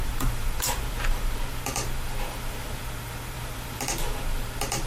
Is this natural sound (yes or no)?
no